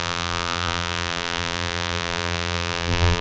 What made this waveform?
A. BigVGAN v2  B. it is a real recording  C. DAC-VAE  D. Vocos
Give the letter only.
A